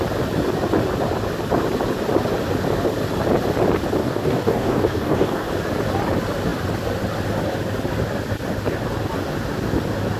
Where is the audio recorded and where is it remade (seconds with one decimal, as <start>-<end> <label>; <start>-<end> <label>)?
0.0-4.0 recorded; 4.0-5.5 remade; 5.5-10.2 recorded